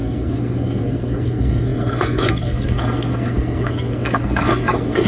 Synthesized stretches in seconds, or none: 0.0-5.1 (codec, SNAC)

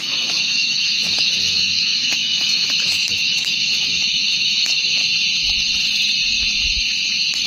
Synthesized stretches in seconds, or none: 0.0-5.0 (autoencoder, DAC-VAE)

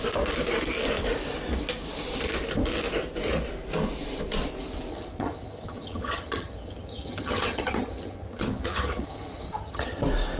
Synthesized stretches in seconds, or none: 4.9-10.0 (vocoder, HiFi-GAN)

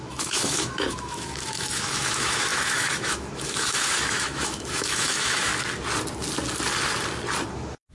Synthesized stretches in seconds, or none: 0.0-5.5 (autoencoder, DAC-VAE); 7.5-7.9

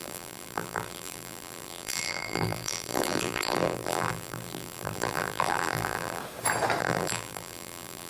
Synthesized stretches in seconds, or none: 0.0-6.2 (vocoder, BigVGAN v2); 6.8-8.1